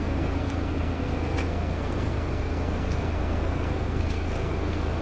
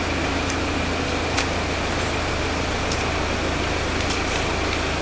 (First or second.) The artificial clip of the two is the first